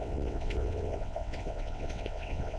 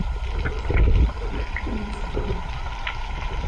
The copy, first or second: first